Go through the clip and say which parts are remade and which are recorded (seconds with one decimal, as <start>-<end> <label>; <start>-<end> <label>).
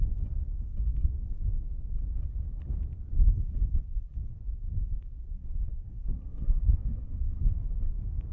0.0-5.3 recorded; 5.3-7.4 remade; 7.4-8.3 recorded